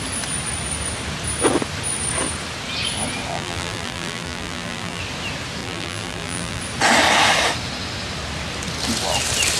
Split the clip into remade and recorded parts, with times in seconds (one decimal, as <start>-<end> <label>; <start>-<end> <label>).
0.0-3.3 recorded; 3.3-5.0 remade; 5.0-5.6 recorded; 5.6-6.6 remade; 6.6-9.6 recorded